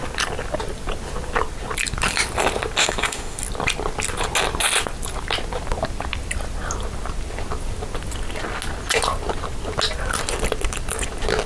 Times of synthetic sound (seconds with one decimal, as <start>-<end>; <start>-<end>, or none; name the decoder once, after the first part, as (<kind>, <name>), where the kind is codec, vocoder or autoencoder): 2.8-3.4 (autoencoder, DAC-VAE)

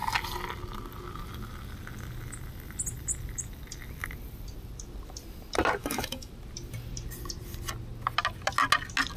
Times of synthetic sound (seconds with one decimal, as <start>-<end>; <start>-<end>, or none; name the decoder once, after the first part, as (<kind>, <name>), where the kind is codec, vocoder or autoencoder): 5.8-6.3 (autoencoder, DAC-VAE)

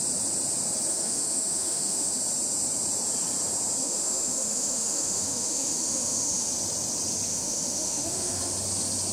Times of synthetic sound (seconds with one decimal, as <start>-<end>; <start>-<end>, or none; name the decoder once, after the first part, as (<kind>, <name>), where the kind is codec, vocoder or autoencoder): 0.9-2.2 (autoencoder, DAC-VAE); 3.8-6.5; 7.3-8.4

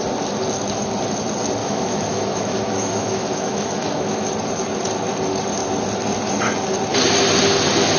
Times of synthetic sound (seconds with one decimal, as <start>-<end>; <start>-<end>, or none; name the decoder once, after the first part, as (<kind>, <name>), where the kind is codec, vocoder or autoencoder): 1.6-4.3 (autoencoder, DAC-VAE)

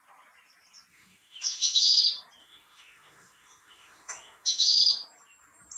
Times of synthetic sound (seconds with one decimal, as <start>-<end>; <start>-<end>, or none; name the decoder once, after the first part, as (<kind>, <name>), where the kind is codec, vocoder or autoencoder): 0.9-2.0 (autoencoder, DAC-VAE); 2.4-4.8

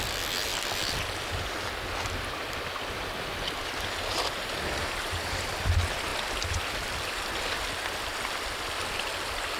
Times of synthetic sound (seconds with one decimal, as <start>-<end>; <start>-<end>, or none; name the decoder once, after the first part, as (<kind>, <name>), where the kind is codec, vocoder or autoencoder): none

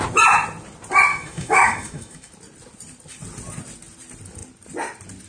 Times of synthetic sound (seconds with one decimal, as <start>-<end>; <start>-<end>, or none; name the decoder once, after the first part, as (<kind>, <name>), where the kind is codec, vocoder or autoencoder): 1.1-2.3 (autoencoder, DAC-VAE)

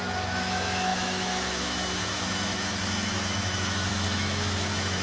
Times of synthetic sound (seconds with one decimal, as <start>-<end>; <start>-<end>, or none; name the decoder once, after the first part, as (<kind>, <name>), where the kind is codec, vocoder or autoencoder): 0.0-5.0 (autoencoder, DAC-VAE)